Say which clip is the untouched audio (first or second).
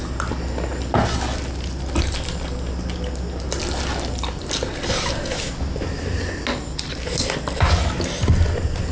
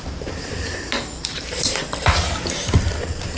first